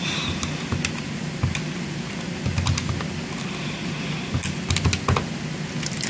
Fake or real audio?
real